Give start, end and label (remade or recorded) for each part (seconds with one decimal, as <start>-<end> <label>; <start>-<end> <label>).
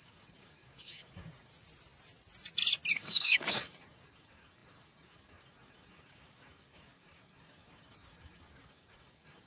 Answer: 0.0-1.5 remade; 1.5-2.9 recorded; 2.9-9.5 remade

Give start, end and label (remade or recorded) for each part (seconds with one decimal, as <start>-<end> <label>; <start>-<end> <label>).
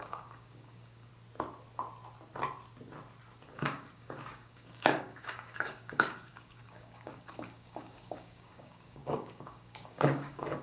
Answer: 0.0-1.1 remade; 1.1-3.5 recorded; 3.5-10.6 remade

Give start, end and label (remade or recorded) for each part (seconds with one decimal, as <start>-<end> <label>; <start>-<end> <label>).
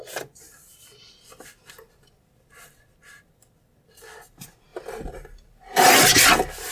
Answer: 0.0-6.7 recorded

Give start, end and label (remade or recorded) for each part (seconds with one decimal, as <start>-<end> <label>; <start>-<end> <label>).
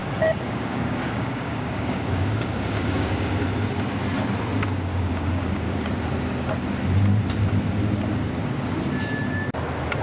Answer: 0.0-3.1 remade; 3.1-4.9 recorded; 4.9-5.9 remade; 5.9-10.0 recorded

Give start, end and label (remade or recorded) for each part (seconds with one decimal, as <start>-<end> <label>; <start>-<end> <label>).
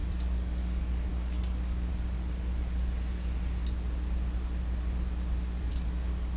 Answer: 0.0-1.9 remade; 1.9-5.7 recorded; 5.7-6.4 remade